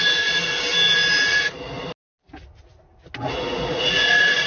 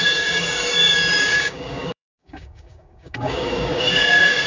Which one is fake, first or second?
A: second